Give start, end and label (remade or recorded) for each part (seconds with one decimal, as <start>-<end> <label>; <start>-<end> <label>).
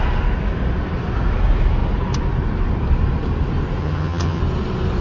0.0-3.8 recorded; 3.8-4.4 remade; 4.4-5.0 recorded